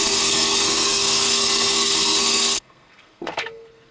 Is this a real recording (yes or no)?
no